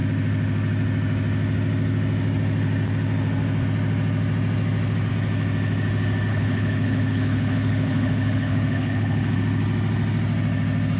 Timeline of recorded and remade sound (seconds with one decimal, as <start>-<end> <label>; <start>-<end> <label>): 0.0-6.3 recorded; 6.3-9.4 remade; 9.4-11.0 recorded